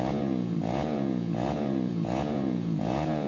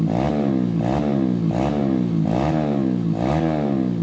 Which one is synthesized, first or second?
first